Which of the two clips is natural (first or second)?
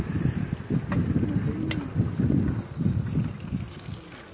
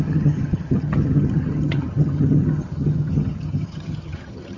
first